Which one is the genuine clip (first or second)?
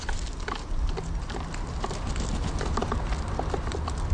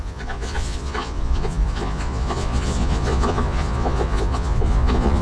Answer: first